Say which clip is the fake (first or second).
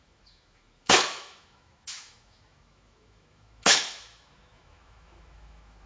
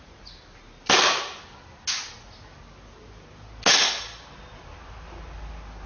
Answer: first